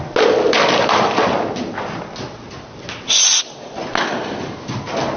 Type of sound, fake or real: real